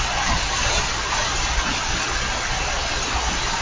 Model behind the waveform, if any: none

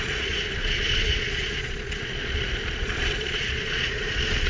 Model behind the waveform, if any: vocoder, Vocos